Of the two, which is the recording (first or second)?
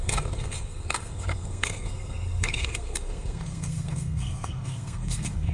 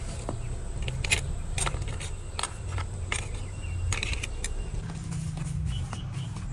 second